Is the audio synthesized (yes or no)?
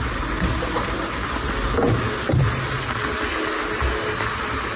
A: no